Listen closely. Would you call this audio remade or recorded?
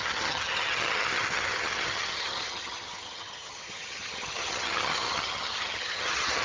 remade